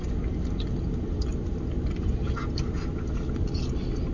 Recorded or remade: recorded